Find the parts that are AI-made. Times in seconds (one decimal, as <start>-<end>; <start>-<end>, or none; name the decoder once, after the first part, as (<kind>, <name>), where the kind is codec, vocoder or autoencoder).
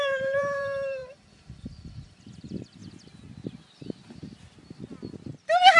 0.0-2.8 (vocoder, BigVGAN v2)